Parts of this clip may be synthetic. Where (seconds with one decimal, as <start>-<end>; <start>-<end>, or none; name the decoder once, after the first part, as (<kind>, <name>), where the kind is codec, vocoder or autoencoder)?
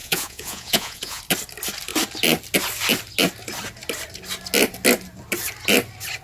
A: 0.0-1.2 (vocoder, Vocos)